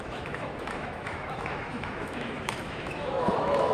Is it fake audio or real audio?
fake